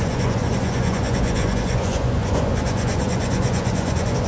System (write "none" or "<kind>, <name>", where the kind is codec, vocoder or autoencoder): vocoder, Vocos